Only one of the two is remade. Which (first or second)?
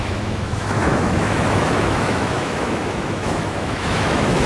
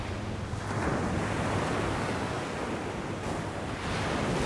first